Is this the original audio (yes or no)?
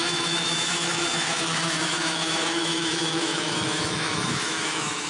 no